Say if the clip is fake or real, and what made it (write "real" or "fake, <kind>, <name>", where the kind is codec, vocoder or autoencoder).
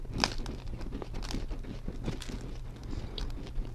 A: real